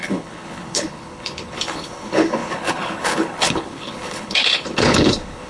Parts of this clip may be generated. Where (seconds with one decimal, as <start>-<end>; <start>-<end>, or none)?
0.0-5.5